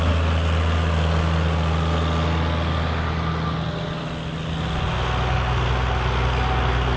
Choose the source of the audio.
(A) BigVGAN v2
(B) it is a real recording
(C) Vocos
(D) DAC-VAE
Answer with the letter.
B